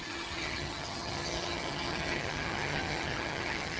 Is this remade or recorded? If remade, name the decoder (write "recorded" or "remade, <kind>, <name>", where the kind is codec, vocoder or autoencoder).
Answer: remade, vocoder, HiFi-GAN